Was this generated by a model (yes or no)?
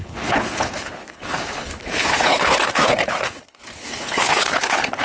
yes